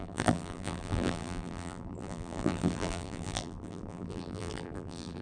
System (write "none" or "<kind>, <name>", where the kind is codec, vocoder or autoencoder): vocoder, BigVGAN v2